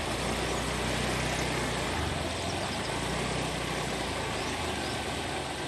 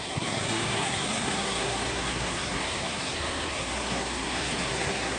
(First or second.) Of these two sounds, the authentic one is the first